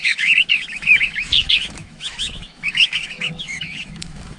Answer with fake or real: fake